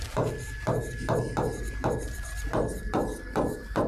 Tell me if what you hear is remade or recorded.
recorded